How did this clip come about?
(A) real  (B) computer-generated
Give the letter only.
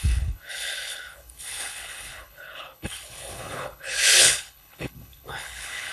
B